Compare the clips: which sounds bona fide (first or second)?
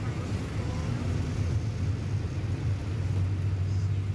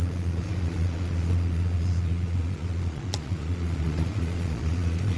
first